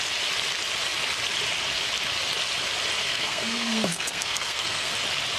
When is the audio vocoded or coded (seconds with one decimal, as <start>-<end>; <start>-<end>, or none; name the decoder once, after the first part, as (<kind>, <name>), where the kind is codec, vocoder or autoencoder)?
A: 3.0-4.9 (codec, SNAC)